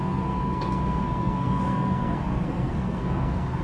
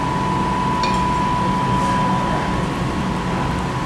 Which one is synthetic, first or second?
first